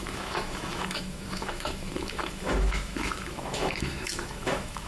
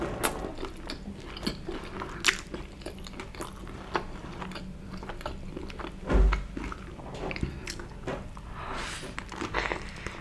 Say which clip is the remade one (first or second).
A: first